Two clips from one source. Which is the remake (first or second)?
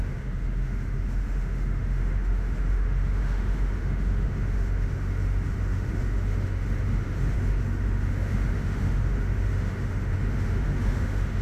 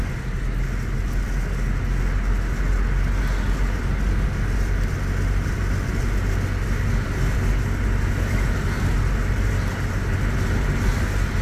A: first